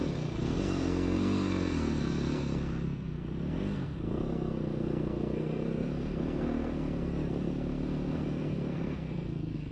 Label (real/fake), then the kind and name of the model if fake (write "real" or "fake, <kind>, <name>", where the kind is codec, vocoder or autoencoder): fake, codec, SNAC